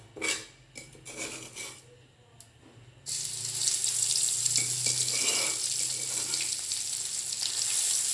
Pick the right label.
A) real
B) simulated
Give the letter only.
A